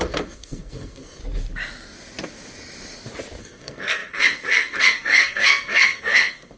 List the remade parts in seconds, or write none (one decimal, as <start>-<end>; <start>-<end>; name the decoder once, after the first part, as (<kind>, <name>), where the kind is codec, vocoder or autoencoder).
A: 0.0-1.2 (codec, SNAC); 3.4-6.6